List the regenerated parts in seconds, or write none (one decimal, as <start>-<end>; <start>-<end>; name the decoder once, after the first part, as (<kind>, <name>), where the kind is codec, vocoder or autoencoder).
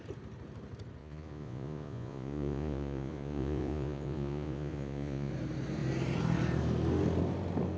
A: 1.0-5.3 (vocoder, Vocos)